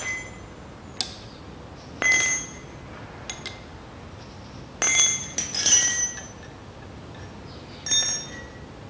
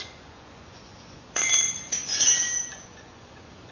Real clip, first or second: first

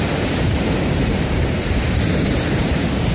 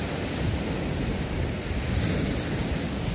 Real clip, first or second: second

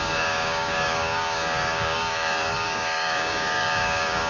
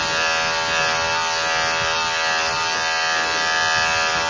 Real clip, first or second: second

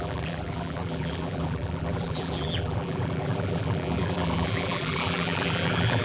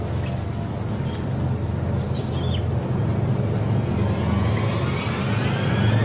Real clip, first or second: second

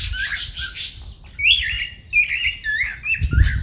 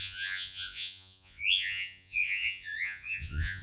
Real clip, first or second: first